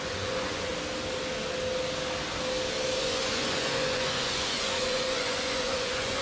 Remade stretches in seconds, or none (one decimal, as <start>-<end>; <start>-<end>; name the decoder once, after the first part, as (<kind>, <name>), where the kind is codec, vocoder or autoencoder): 0.0-0.7 (vocoder, Vocos); 3.0-6.2